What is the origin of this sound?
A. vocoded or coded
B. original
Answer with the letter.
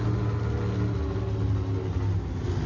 B